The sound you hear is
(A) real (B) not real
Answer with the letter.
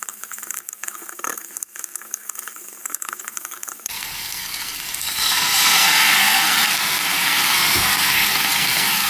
B